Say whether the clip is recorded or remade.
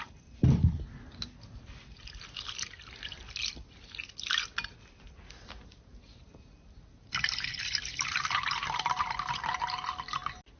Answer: recorded